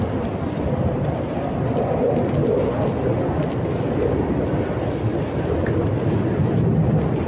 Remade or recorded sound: recorded